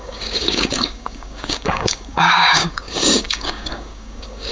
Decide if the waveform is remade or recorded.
remade